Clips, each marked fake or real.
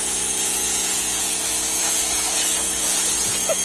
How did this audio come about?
fake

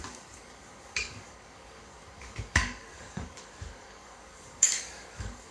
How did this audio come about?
fake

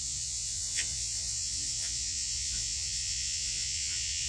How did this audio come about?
fake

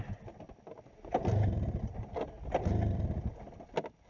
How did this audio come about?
real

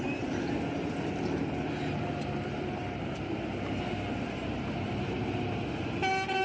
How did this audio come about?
real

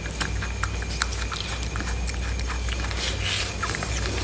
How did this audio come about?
real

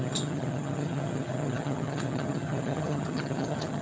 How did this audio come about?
fake